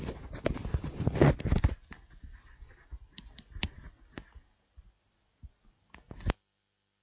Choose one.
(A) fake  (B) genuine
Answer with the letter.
B